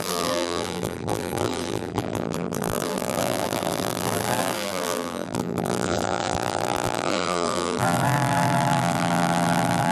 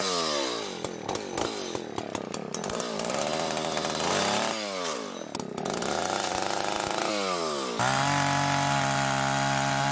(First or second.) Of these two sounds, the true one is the second